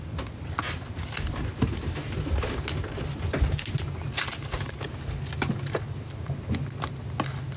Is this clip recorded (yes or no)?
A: yes